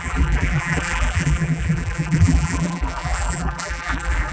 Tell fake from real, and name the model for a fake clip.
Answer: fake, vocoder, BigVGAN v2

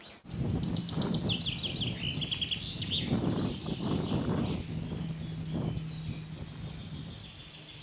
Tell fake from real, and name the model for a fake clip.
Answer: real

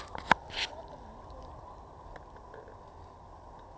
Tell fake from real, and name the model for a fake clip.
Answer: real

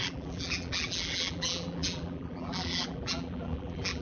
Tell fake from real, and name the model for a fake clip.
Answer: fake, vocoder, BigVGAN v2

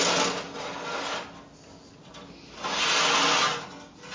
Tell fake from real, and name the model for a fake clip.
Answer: real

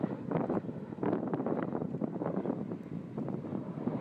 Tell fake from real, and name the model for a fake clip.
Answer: fake, vocoder, BigVGAN v2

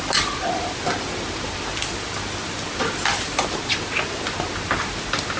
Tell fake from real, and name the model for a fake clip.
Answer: real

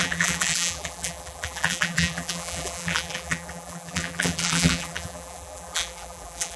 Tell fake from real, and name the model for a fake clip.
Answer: fake, vocoder, BigVGAN v2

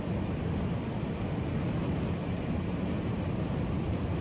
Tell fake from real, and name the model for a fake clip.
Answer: fake, vocoder, BigVGAN v2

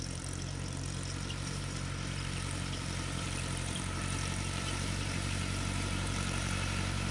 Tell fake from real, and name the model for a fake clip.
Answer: fake, vocoder, BigVGAN v2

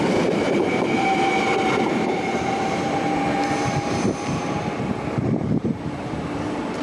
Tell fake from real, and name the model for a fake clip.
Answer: fake, vocoder, BigVGAN v2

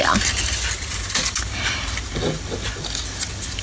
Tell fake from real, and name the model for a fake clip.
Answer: real